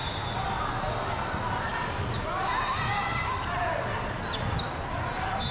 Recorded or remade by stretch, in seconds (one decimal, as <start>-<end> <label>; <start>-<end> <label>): 0.0-5.5 recorded